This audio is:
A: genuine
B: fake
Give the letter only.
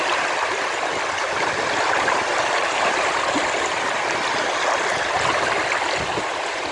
A